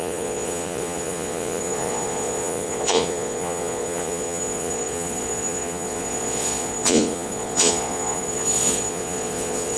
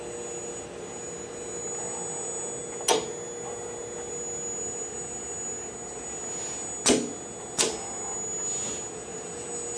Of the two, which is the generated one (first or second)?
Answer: first